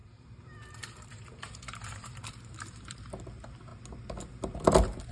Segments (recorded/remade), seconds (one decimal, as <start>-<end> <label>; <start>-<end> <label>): 0.0-3.0 remade; 3.0-5.1 recorded